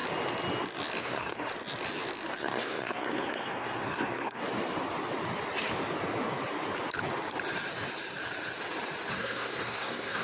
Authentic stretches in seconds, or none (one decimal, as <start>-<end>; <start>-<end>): 0.0-1.0; 1.5-2.4; 4.4-9.1